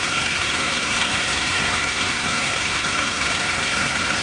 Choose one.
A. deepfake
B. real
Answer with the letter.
A